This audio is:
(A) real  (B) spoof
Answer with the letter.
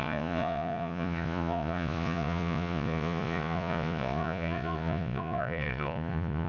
B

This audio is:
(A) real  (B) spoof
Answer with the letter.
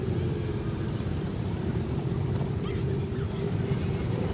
B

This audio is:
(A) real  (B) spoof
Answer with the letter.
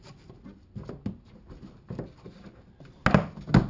A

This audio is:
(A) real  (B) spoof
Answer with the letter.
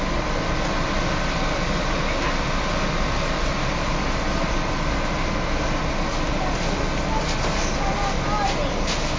A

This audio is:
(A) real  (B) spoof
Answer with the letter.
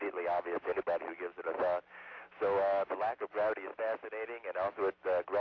A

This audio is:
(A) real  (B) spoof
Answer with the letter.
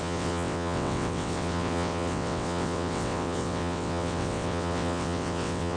B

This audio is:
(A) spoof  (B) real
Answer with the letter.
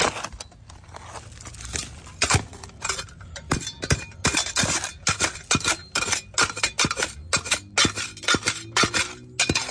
B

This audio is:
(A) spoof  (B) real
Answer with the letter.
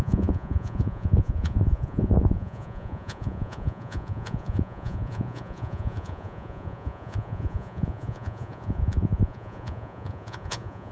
A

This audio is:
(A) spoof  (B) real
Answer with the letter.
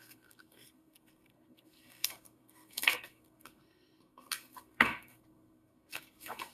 A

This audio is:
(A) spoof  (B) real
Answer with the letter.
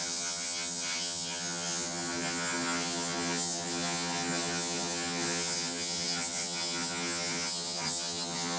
A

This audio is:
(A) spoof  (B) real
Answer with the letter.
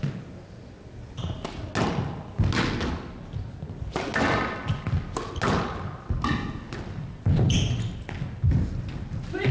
B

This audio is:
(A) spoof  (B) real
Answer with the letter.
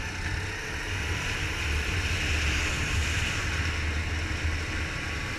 B